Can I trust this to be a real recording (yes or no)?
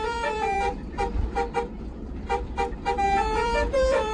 no